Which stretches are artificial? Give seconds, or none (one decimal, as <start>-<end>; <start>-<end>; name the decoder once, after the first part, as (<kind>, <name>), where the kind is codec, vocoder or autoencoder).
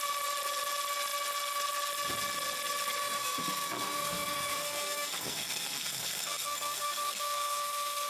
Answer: 3.0-8.1 (codec, SNAC)